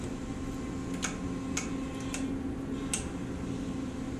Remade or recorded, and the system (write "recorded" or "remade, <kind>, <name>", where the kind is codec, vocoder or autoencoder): recorded